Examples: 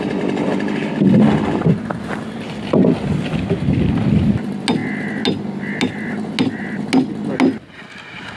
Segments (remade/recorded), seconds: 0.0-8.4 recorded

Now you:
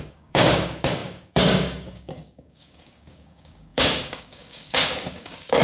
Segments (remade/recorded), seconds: 0.0-5.6 remade

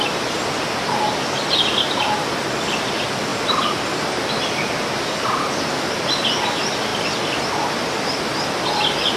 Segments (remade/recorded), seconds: 0.0-9.2 recorded

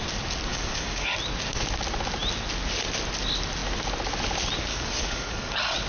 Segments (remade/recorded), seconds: 0.0-0.5 recorded; 0.5-1.1 remade; 1.1-4.7 recorded; 4.7-5.5 remade; 5.5-5.9 recorded

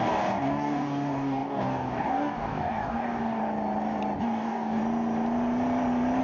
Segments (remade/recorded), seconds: 0.0-3.4 remade; 3.4-4.2 recorded; 4.2-4.8 remade; 4.8-6.2 recorded

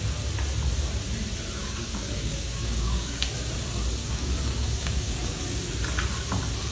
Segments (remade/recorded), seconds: 0.0-1.6 recorded; 1.6-3.3 remade; 3.3-4.0 recorded; 4.0-5.4 remade; 5.4-6.7 recorded

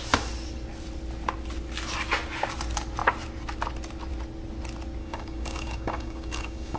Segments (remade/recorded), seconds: 0.0-5.0 recorded; 5.0-6.8 remade

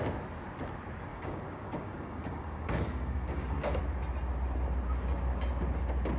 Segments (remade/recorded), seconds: 0.0-1.1 recorded; 1.1-3.8 remade; 3.8-6.2 recorded